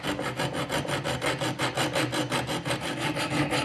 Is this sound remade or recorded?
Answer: recorded